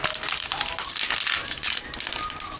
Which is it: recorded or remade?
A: recorded